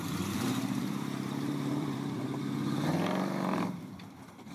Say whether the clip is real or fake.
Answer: fake